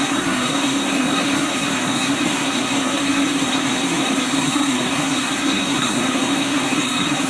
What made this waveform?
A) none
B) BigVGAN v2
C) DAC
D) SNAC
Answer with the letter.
D